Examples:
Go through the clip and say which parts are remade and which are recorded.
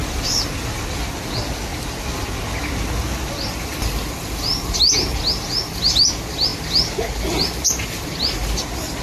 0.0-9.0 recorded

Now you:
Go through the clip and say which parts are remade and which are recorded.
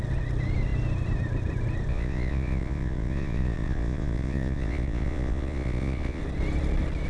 0.0-1.9 recorded; 1.9-6.2 remade; 6.2-7.1 recorded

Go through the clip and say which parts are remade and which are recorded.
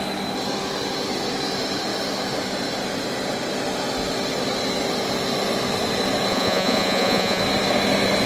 0.0-6.3 recorded; 6.3-7.4 remade; 7.4-8.3 recorded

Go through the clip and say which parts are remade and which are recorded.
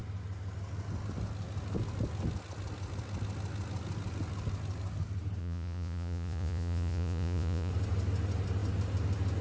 0.0-5.4 recorded; 5.4-7.7 remade; 7.7-9.4 recorded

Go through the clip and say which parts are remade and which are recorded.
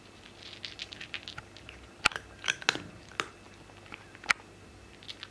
0.0-5.3 recorded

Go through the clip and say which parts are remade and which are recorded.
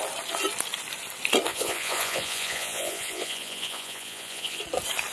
0.0-1.5 recorded; 1.5-4.6 remade; 4.6-5.1 recorded